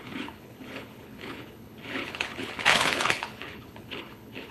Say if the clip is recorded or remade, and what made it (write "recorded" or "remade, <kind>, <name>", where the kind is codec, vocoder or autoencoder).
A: remade, codec, HILCodec